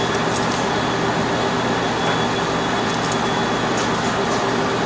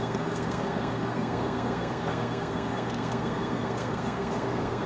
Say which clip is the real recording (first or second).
first